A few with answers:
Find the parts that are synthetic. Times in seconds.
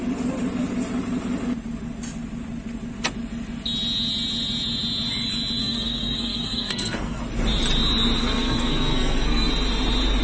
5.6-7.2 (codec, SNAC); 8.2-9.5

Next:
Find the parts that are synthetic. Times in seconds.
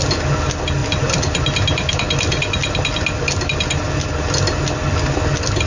none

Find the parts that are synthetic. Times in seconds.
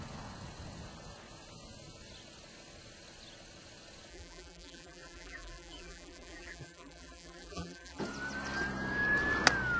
4.1-8.0 (vocoder, BigVGAN v2)